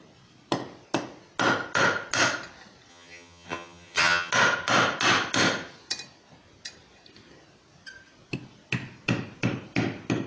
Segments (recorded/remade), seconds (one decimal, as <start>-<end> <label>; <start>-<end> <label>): 0.0-2.9 recorded; 2.9-4.3 remade; 4.3-10.3 recorded